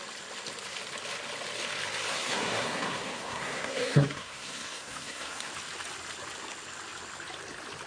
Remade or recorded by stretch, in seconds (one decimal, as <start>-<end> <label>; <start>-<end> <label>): 0.0-2.1 recorded; 2.1-5.5 remade; 5.5-7.9 recorded